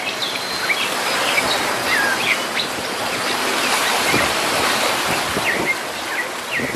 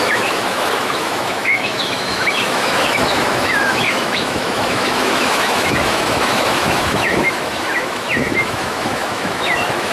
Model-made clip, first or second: second